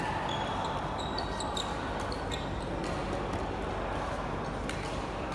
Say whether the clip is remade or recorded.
recorded